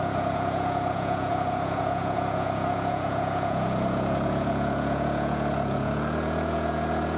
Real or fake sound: fake